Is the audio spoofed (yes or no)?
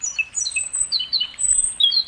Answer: no